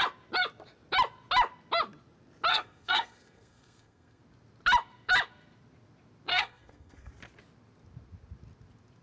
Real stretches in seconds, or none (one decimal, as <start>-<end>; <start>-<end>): 0.0-2.5; 4.2-6.3; 7.1-9.0